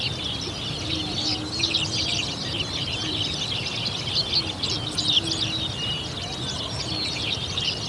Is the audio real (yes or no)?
yes